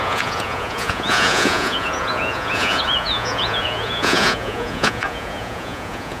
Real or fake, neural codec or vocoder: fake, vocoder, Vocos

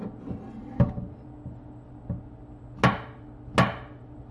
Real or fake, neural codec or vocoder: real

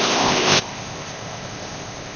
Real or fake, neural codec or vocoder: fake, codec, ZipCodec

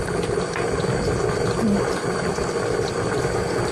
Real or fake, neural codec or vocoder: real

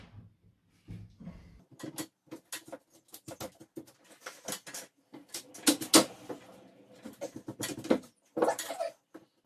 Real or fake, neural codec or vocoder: real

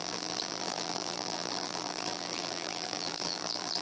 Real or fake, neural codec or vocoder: fake, vocoder, BigVGAN v2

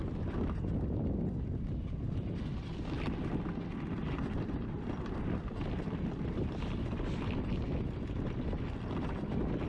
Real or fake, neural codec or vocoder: real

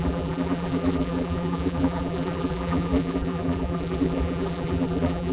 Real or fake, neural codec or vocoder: fake, vocoder, BigVGAN v2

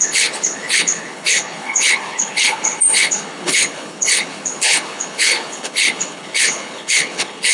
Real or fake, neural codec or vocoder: fake, codec, HILCodec